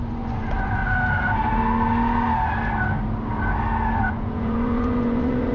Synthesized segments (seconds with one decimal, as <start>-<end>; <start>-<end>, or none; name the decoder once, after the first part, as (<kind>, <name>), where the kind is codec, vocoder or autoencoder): 0.0-0.8 (vocoder, Vocos); 4.1-5.5